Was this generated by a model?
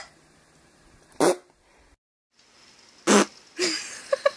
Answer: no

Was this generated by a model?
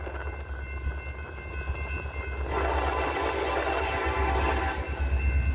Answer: no